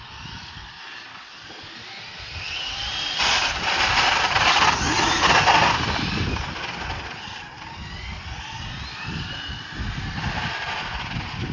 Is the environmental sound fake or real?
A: real